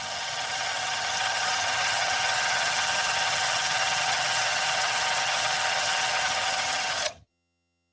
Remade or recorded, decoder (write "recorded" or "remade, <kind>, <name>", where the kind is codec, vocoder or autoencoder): remade, vocoder, HiFi-GAN